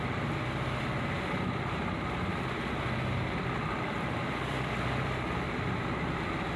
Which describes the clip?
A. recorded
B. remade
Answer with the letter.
B